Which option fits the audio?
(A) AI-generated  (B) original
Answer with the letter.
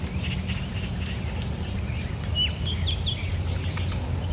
B